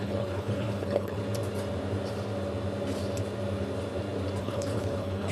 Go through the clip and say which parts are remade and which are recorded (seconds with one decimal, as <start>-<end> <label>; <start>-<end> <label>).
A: 0.0-1.2 remade; 1.2-4.4 recorded; 4.4-5.3 remade